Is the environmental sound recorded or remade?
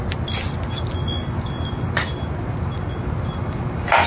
recorded